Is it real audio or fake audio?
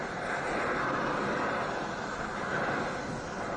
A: real